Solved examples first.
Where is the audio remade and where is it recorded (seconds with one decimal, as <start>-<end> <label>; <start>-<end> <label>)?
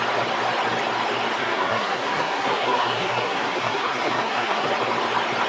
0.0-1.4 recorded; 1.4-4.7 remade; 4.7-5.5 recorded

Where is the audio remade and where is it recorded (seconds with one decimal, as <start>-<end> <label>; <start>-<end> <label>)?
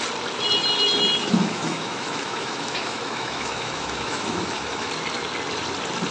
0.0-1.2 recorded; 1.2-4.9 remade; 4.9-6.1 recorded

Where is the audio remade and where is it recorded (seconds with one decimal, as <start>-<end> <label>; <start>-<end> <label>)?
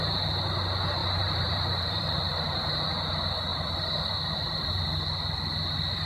0.0-1.0 recorded; 1.0-2.7 remade; 2.7-3.5 recorded; 3.5-4.7 remade; 4.7-6.1 recorded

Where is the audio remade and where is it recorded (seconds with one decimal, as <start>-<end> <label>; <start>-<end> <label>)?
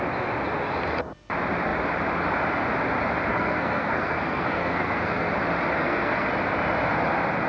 0.0-3.3 recorded; 3.3-5.3 remade; 5.3-5.8 recorded; 5.8-6.3 remade; 6.3-7.5 recorded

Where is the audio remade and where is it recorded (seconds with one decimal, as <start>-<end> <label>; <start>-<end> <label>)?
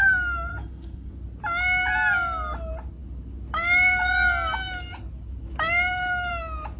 0.0-0.5 recorded; 0.5-1.1 remade; 1.1-6.8 recorded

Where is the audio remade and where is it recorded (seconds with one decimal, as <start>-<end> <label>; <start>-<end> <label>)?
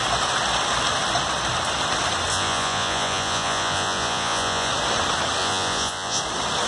0.0-2.3 recorded; 2.3-4.7 remade; 4.7-5.4 recorded; 5.4-6.2 remade; 6.2-6.7 recorded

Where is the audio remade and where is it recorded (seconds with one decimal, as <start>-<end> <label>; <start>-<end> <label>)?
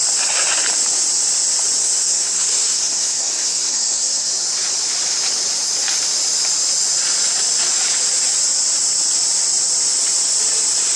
0.0-1.8 recorded; 1.8-4.3 remade; 4.3-11.0 recorded